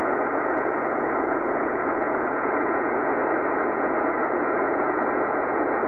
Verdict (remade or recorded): remade